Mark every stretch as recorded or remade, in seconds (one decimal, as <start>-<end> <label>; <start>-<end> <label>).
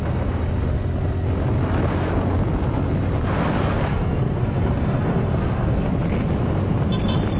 0.0-3.9 recorded; 3.9-5.9 remade; 5.9-7.4 recorded